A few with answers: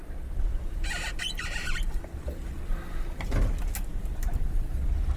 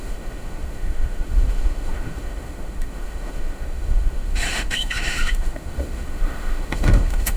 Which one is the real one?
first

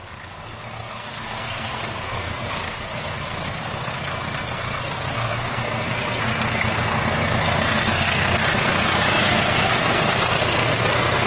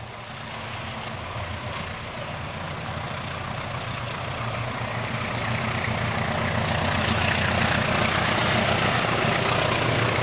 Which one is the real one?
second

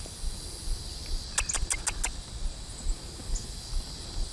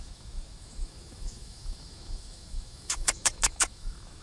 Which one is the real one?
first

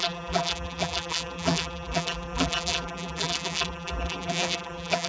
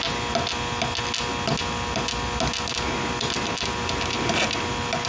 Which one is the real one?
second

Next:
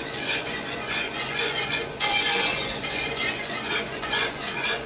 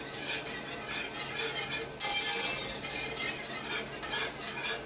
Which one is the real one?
second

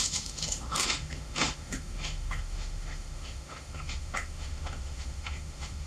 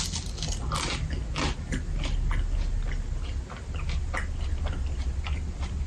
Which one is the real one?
second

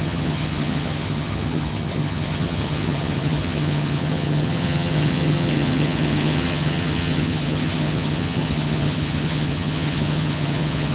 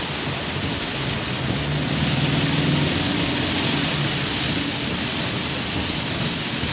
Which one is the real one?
second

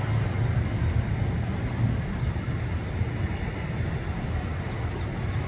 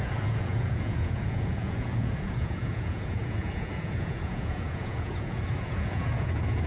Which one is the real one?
first